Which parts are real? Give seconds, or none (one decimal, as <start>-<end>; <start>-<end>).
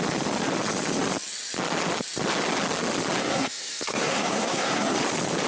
0.0-3.2; 4.9-5.5